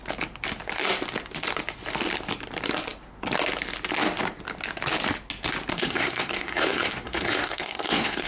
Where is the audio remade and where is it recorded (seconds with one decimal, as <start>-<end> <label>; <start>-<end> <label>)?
0.0-5.7 recorded; 5.7-8.3 remade